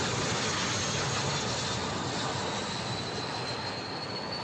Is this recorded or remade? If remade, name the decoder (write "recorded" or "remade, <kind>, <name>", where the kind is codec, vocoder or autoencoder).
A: recorded